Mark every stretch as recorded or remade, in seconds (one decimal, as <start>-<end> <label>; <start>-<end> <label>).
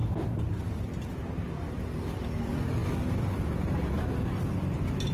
0.0-0.6 remade; 0.6-1.2 recorded; 1.2-1.9 remade; 1.9-5.1 recorded